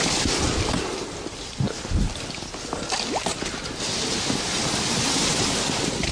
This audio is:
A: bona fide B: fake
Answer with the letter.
A